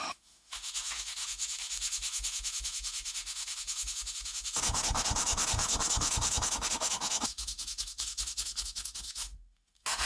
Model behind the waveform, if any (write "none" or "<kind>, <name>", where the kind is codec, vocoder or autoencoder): autoencoder, DAC-VAE